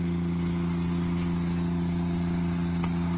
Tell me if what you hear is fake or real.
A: real